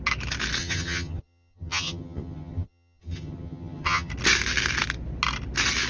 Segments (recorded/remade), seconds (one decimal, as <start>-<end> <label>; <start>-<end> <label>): 0.0-0.6 recorded; 0.6-4.1 remade; 4.1-5.9 recorded